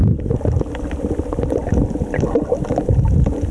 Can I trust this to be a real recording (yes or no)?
yes